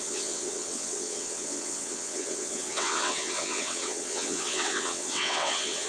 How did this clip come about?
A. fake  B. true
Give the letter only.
A